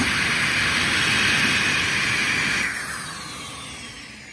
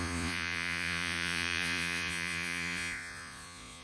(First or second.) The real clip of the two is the first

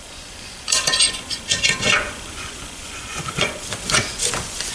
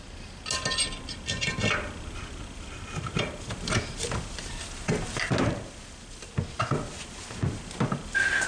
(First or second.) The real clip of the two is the second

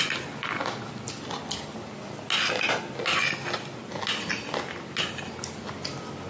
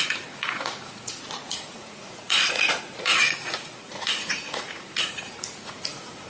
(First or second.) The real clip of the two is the first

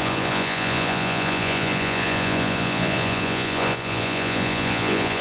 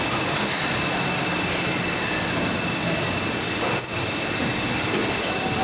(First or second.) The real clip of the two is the second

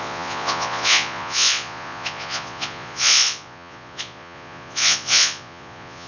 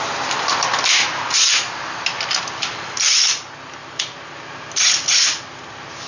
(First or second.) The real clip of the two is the second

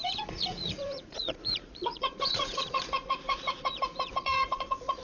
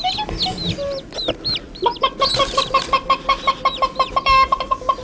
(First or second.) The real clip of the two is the second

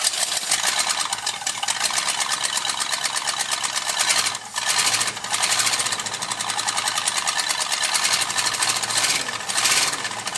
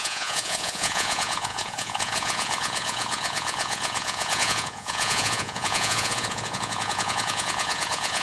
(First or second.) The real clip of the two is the first